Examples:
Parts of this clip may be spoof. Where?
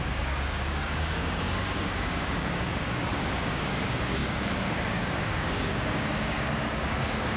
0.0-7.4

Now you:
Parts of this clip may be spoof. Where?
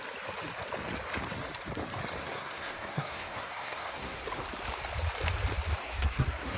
2.2-4.2; 5.8-6.6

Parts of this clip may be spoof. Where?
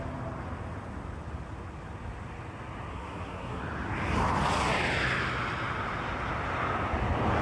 2.9-3.6